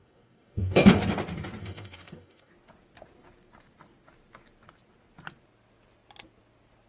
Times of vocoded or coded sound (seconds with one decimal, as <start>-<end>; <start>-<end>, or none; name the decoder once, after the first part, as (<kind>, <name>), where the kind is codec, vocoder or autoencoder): 0.0-1.0 (codec, DAC); 1.6-2.5

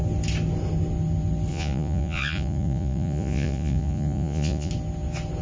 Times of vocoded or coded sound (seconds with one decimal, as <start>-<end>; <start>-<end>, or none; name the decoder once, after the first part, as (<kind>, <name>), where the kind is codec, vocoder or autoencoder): 1.5-4.7 (vocoder, Vocos)

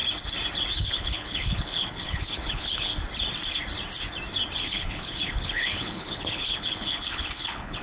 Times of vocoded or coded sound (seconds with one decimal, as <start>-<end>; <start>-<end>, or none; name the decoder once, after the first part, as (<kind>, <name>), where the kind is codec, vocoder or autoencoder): 0.8-2.9 (codec, HILCodec); 4.6-7.8

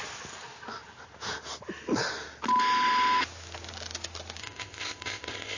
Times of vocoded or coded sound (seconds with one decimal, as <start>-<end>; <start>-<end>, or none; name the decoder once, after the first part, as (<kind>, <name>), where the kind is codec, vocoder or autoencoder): 4.4-5.6 (codec, ZipCodec)

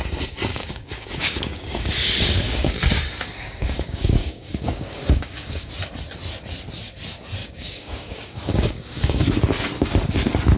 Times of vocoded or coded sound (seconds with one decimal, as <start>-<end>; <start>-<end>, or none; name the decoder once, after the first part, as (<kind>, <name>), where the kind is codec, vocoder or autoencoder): 0.5-5.7 (codec, DAC); 7.4-9.3

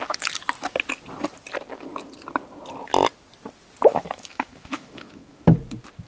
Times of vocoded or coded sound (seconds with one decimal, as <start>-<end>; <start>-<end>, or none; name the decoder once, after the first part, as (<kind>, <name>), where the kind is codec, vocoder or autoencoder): 3.9-5.4 (autoencoder, DAC-VAE)

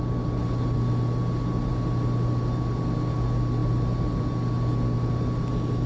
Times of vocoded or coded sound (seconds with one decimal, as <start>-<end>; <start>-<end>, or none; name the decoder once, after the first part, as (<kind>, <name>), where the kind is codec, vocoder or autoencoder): none

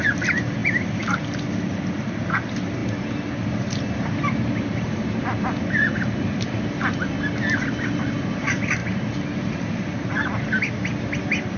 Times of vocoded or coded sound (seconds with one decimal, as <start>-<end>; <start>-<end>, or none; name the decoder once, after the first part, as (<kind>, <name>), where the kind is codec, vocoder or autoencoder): 0.0-11.6 (vocoder, BigVGAN v2)